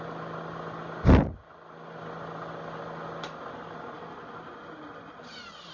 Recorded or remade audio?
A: recorded